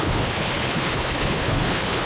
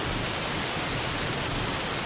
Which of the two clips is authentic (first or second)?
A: second